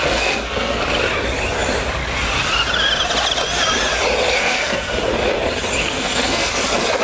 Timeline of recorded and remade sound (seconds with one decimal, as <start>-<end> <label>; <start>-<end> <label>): 0.0-0.8 remade; 0.8-4.4 recorded; 4.4-4.9 remade; 4.9-5.8 recorded; 5.8-6.5 remade; 6.5-7.0 recorded